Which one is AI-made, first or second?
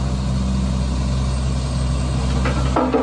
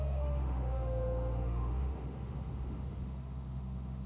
second